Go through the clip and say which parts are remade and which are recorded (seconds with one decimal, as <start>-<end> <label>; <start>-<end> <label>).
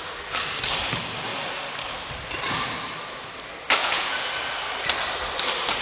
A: 0.0-3.8 recorded; 3.8-4.3 remade; 4.3-5.8 recorded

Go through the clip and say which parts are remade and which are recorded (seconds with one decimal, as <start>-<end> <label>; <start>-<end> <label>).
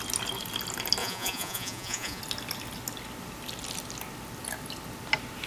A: 0.0-1.0 recorded; 1.0-2.2 remade; 2.2-5.5 recorded